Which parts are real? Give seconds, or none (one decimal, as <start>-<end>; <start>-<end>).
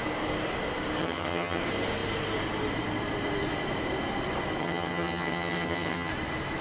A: 0.0-1.0; 1.6-4.6; 6.1-6.6